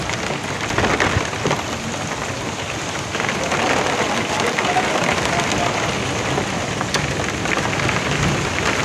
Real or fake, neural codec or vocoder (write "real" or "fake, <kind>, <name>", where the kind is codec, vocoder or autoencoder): real